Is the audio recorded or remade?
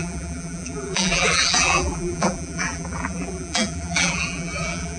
remade